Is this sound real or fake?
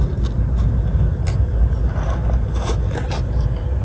real